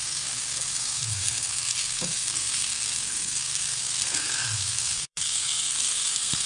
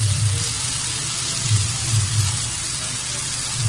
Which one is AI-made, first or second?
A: first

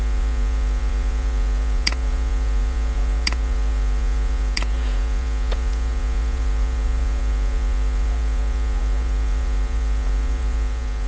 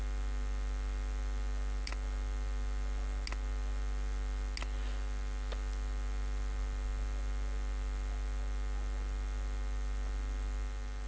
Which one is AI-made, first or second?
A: first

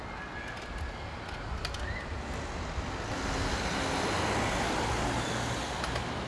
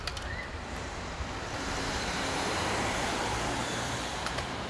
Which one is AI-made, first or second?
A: second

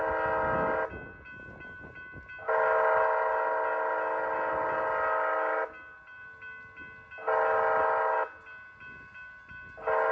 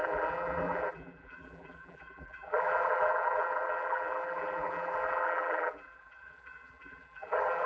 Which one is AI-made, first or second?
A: second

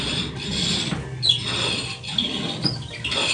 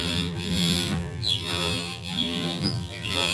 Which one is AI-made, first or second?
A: second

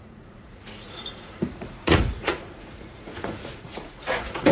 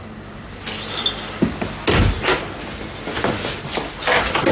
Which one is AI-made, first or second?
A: first